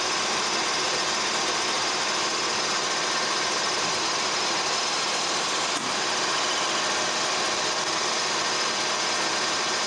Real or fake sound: real